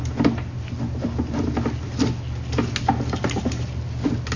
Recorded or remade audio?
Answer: recorded